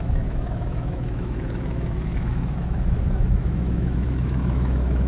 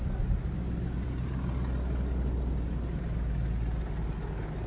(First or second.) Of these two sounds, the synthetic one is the first